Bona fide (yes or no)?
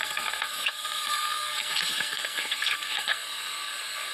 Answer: no